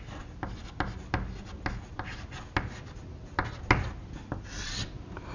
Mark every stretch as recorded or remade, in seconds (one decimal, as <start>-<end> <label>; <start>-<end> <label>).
0.0-5.3 recorded